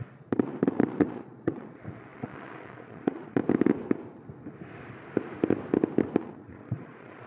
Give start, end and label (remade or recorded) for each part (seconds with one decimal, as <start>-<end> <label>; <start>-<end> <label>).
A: 0.0-3.4 remade; 3.4-6.2 recorded; 6.2-7.3 remade

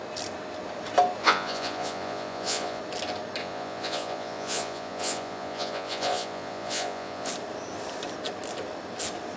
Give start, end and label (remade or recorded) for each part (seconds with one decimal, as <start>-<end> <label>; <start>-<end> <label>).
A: 0.0-1.2 recorded; 1.2-2.8 remade; 2.8-3.4 recorded; 3.4-7.3 remade; 7.3-9.4 recorded